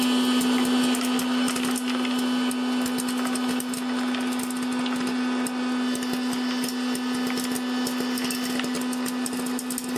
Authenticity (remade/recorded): recorded